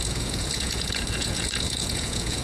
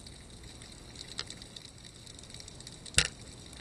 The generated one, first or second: first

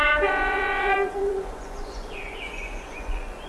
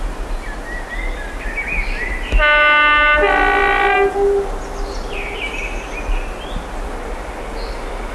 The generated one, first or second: first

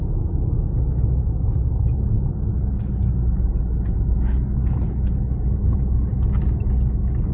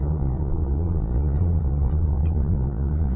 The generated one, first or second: second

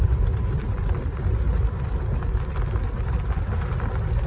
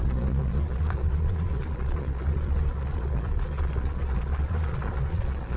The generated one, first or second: second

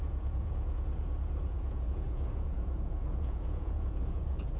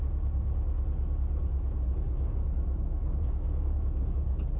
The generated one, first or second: first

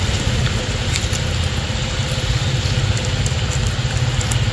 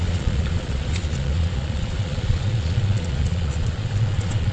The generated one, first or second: second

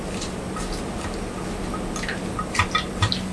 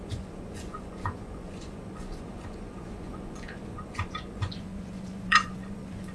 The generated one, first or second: second